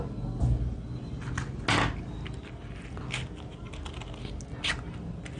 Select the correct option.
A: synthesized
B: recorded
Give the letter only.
B